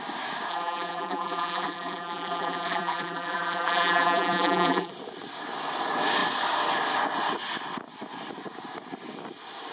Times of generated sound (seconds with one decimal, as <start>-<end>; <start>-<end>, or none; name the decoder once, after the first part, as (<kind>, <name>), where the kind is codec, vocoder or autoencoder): 0.5-4.9 (vocoder, BigVGAN v2)